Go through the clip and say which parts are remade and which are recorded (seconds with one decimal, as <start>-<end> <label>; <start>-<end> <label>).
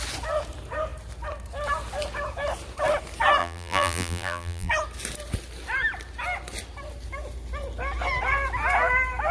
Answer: 0.0-3.4 recorded; 3.4-4.7 remade; 4.7-9.3 recorded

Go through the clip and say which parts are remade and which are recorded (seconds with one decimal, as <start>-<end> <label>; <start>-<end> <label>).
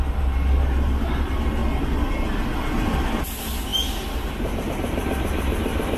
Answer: 0.0-1.6 remade; 1.6-3.2 recorded; 3.2-6.0 remade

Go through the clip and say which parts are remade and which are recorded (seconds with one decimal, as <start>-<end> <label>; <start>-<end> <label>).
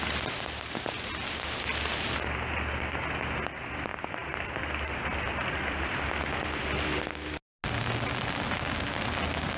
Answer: 0.0-3.9 recorded; 3.9-6.0 remade; 6.0-9.6 recorded